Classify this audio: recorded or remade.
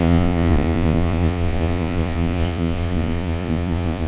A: remade